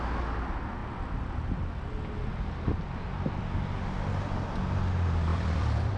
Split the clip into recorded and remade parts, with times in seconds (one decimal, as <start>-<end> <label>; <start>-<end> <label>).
0.0-5.3 recorded; 5.3-6.0 remade